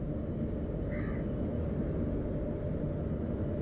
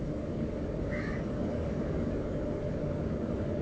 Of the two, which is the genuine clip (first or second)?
first